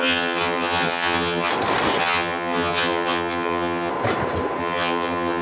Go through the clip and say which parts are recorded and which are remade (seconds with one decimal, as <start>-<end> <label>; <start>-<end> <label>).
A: 0.0-1.5 remade; 1.5-2.0 recorded; 2.0-3.9 remade; 3.9-4.6 recorded; 4.6-5.4 remade